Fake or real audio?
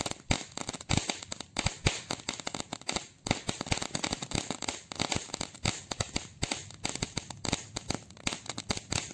real